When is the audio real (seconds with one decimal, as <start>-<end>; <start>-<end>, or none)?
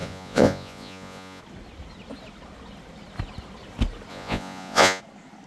1.4-4.1; 5.0-5.5